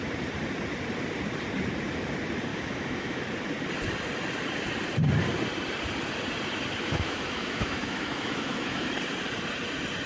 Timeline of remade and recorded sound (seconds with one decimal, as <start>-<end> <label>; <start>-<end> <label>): 0.0-2.5 recorded; 2.5-3.2 remade; 3.2-6.8 recorded; 6.8-8.9 remade; 8.9-10.1 recorded